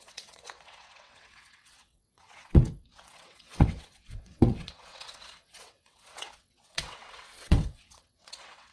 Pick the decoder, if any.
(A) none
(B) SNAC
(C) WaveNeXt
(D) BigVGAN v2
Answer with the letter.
C